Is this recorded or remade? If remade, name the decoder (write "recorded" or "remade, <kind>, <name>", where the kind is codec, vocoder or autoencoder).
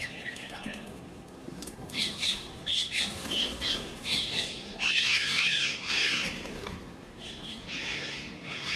remade, codec, SNAC